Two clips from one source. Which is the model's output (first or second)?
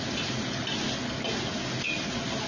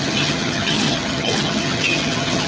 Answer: second